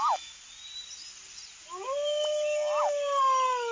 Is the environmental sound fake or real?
real